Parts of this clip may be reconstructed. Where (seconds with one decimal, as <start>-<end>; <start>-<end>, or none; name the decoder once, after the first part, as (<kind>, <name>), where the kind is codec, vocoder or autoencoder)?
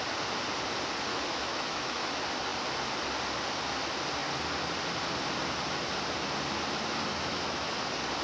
1.1-2.1 (autoencoder, DAC-VAE); 7.1-7.7